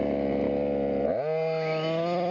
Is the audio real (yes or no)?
yes